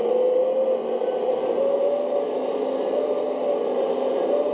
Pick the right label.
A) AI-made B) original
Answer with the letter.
B